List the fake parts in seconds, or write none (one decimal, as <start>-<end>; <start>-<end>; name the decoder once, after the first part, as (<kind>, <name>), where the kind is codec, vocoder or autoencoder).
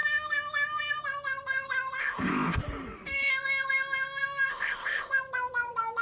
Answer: 2.0-2.6 (codec, ZipCodec); 4.5-5.1